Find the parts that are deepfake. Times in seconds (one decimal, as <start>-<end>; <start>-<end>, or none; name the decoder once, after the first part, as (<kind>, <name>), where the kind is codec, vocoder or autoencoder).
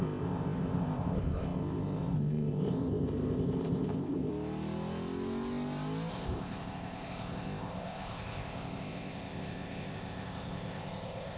0.0-4.3 (codec, ZipCodec); 6.1-11.4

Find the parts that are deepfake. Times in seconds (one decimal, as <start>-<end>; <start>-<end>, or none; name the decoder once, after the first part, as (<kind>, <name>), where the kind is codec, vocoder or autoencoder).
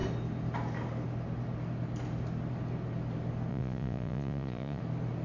3.5-4.8 (vocoder, Vocos)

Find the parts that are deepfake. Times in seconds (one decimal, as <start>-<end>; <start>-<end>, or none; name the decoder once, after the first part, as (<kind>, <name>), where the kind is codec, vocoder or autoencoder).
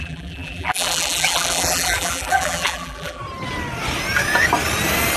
0.0-3.2 (vocoder, BigVGAN v2)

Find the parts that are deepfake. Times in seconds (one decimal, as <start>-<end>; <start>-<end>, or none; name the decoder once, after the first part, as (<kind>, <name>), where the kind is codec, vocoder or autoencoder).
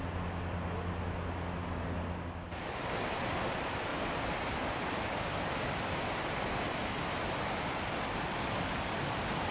none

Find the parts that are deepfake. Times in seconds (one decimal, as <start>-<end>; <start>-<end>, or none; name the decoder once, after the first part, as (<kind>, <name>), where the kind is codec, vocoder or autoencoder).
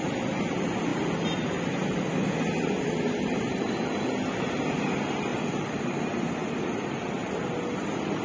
5.3-6.0 (vocoder, BigVGAN v2); 6.4-8.2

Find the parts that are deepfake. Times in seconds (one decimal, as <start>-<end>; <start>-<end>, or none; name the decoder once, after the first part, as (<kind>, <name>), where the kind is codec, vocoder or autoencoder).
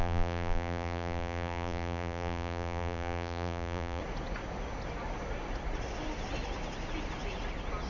0.0-4.0 (vocoder, BigVGAN v2)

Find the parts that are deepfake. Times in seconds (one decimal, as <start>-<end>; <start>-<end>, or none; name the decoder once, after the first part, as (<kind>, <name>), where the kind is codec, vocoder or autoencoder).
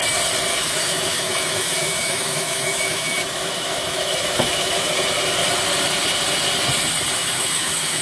0.5-4.9 (autoencoder, DAC-VAE); 7.2-8.0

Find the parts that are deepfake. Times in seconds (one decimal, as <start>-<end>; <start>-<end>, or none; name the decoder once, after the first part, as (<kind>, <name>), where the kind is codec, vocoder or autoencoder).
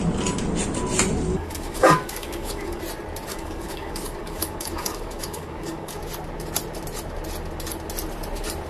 1.3-2.8 (codec, DAC); 3.3-6.0